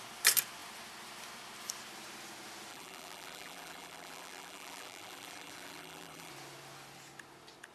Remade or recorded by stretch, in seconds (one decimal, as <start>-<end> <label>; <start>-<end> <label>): 0.0-2.7 recorded; 2.7-6.3 remade; 6.3-7.7 recorded